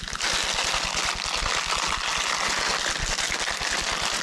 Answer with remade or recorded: recorded